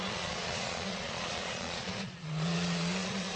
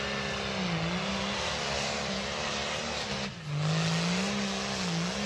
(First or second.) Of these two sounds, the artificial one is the first